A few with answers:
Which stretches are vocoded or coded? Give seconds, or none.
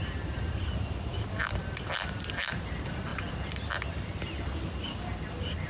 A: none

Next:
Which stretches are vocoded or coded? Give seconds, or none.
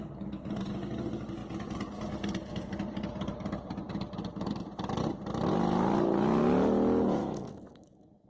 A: 7.2-8.3 (autoencoder, DAC-VAE)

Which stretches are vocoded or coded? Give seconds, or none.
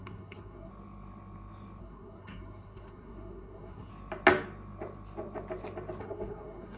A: 0.0-0.7 (codec, SNAC); 1.8-3.9; 6.0-6.8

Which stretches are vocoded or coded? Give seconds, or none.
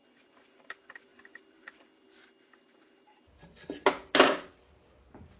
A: none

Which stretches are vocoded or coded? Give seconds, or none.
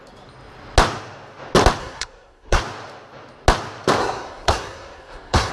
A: 1.8-2.6 (codec, SNAC); 4.0-5.5